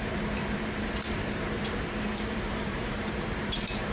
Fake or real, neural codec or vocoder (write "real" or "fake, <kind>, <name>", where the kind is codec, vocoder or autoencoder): fake, vocoder, BigVGAN v2